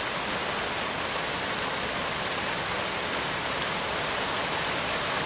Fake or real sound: real